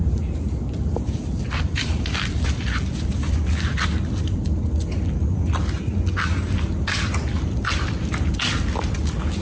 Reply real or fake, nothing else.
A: real